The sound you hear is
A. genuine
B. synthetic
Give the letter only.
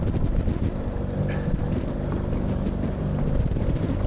B